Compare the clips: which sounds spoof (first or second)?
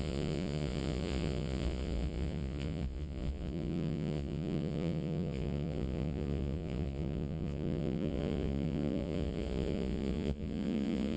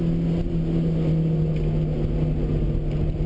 first